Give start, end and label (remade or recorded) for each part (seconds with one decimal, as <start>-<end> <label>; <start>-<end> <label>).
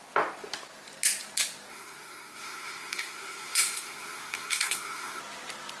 0.0-1.7 recorded; 1.7-5.2 remade; 5.2-5.8 recorded